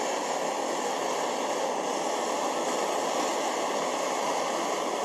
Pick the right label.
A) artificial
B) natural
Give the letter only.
B